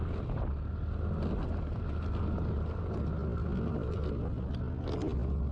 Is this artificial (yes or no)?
no